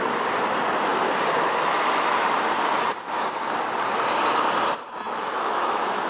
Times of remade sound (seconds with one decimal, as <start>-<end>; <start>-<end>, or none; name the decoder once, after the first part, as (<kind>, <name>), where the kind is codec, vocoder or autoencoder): 4.9-6.1 (autoencoder, DAC-VAE)